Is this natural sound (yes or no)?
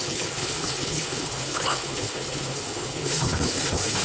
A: no